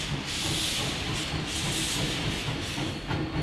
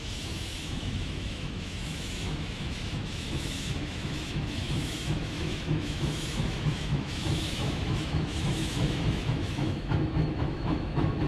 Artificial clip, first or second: second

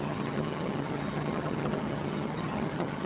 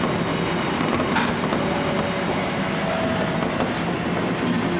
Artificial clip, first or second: first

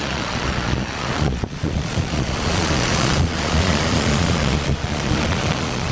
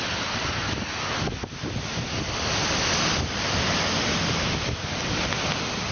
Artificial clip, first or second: first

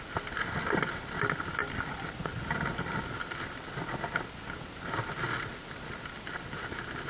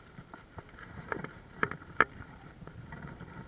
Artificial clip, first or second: second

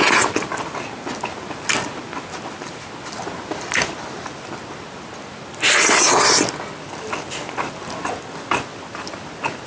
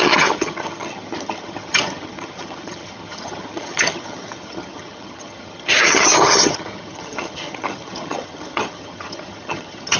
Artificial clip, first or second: second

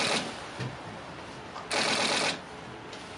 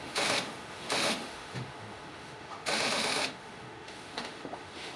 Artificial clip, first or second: second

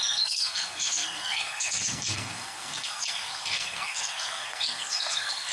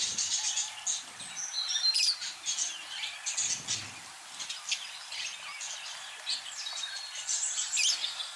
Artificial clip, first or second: first